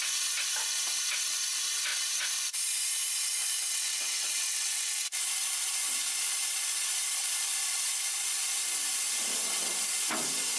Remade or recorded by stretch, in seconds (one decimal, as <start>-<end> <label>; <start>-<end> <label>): 0.0-3.7 recorded; 3.7-5.3 remade; 5.3-10.6 recorded